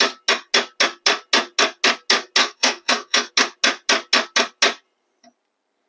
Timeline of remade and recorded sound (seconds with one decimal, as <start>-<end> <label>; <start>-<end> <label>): 0.0-2.4 recorded; 2.4-3.3 remade; 3.3-5.9 recorded